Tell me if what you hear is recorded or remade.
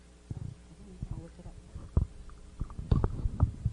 recorded